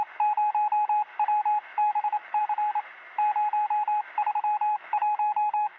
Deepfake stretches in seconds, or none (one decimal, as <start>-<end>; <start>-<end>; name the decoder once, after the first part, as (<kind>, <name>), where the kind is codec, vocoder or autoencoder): 1.7-2.4 (autoencoder, DAC-VAE); 4.7-5.8